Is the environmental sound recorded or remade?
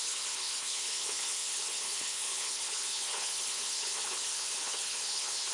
remade